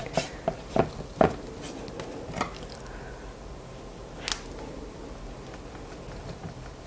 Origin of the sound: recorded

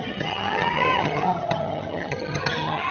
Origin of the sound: remade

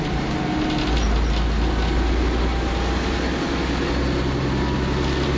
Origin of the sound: recorded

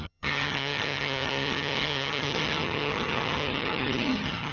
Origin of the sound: remade